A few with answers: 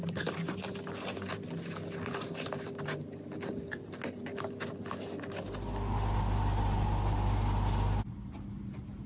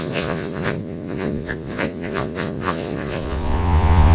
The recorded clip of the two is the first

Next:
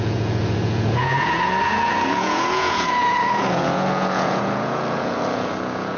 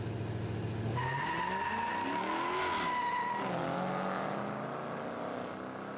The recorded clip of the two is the second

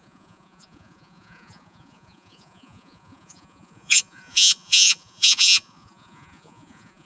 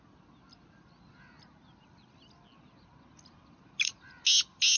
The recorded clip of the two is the second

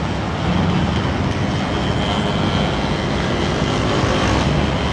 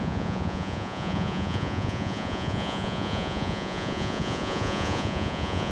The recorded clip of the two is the first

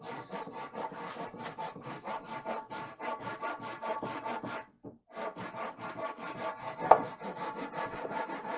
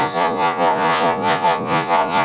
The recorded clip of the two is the first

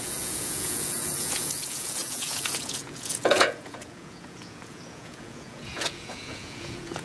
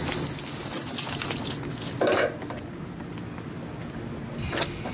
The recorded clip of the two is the second